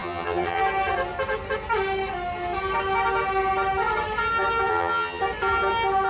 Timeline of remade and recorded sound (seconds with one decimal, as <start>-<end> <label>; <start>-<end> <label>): 0.0-0.6 remade; 0.6-4.7 recorded; 4.7-5.2 remade; 5.2-6.1 recorded